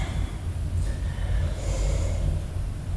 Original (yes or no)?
yes